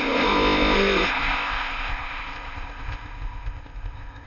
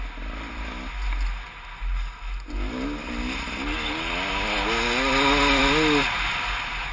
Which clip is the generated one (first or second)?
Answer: first